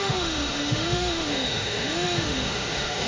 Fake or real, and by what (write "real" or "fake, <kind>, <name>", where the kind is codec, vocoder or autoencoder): fake, autoencoder, DAC-VAE